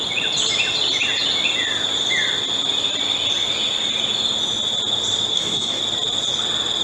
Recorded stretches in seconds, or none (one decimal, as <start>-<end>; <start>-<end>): 0.0-5.3; 5.8-6.8